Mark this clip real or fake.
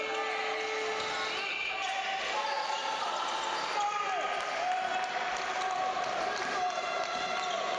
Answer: real